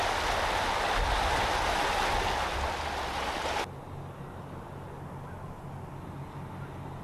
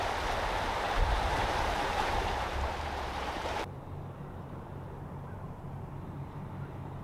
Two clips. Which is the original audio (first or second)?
first